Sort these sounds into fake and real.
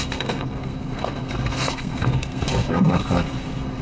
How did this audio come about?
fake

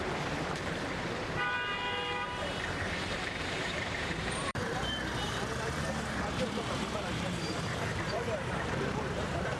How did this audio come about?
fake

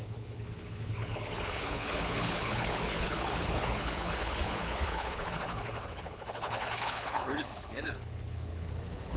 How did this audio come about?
fake